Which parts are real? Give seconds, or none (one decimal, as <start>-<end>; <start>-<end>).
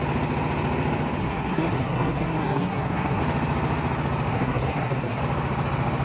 0.0-1.2; 3.2-4.3; 5.2-6.0